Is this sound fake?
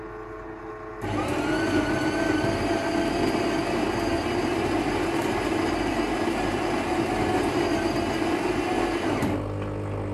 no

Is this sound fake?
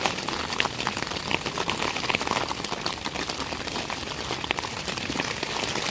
no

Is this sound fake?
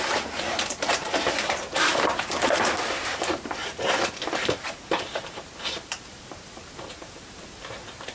yes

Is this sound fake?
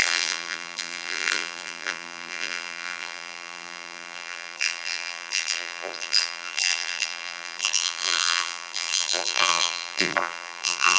yes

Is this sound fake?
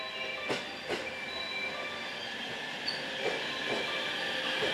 no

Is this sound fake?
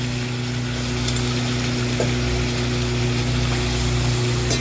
no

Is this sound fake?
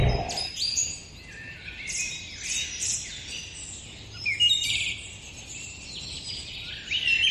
no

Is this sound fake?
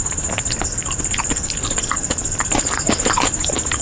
no